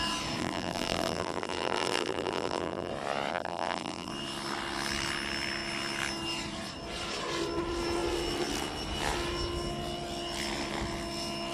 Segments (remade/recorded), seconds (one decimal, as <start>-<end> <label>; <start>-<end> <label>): 0.0-0.4 recorded; 0.4-2.9 remade; 2.9-3.3 recorded; 3.3-4.1 remade; 4.1-11.5 recorded